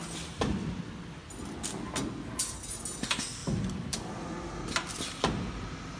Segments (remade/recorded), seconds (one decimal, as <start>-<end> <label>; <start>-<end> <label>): 0.0-6.0 recorded